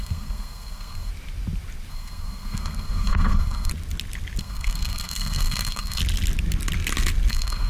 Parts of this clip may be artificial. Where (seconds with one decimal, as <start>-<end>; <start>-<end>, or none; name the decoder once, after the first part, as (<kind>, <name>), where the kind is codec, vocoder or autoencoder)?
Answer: 0.0-1.1 (codec, SNAC); 1.9-3.7; 4.4-6.0; 7.3-7.7